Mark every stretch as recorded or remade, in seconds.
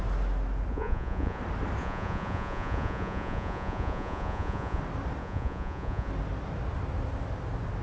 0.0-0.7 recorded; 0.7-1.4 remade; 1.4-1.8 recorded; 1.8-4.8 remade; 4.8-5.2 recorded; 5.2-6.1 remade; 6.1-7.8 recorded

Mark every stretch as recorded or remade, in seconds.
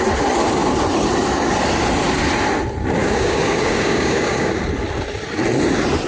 0.0-3.0 recorded; 3.0-4.5 remade; 4.5-6.1 recorded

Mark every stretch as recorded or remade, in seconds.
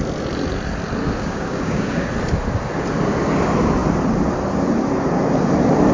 0.0-1.0 recorded; 1.0-2.1 remade; 2.1-5.9 recorded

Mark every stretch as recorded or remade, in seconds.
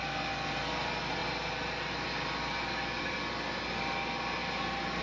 0.0-5.0 recorded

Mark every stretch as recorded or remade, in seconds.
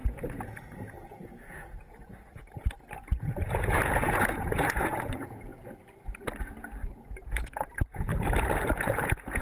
0.0-5.5 remade; 5.5-6.9 recorded; 6.9-8.1 remade; 8.1-8.8 recorded; 8.8-9.4 remade